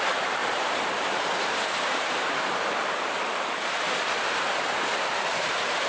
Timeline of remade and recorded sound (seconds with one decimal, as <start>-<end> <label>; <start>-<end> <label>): 0.0-5.9 remade